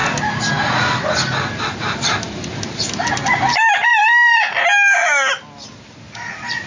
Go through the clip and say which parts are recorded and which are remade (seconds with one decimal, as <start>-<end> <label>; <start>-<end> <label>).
0.0-6.7 recorded